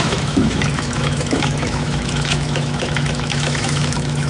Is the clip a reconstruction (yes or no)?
yes